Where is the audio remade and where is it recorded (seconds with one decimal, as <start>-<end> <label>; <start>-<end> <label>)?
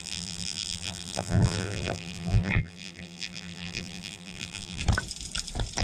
0.0-4.8 remade; 4.8-5.8 recorded